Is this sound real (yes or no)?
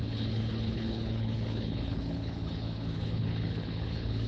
no